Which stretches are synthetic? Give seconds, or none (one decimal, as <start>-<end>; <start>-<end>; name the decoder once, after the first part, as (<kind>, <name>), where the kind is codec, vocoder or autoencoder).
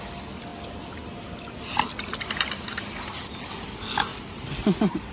none